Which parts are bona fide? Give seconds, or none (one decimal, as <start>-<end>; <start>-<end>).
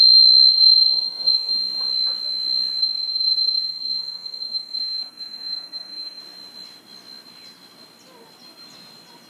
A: 0.0-0.5; 1.5-2.8; 6.2-9.3